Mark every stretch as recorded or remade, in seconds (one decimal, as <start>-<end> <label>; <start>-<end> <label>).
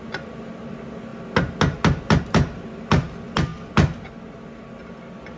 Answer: 0.0-5.4 recorded